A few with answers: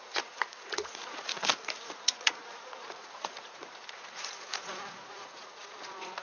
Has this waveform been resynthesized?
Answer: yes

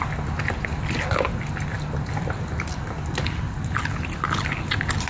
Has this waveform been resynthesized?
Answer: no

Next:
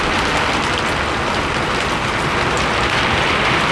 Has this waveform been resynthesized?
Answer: no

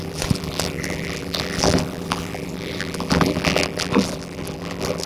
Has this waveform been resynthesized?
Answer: yes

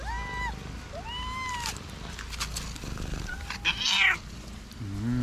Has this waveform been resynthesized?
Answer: no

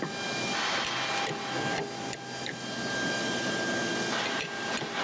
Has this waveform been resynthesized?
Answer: no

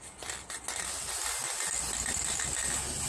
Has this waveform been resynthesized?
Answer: no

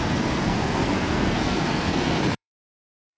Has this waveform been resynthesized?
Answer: yes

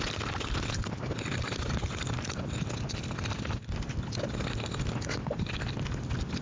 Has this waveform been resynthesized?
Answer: no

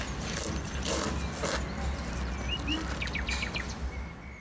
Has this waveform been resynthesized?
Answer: no